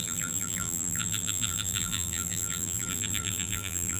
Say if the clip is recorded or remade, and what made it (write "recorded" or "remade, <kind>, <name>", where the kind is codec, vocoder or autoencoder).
remade, vocoder, BigVGAN v2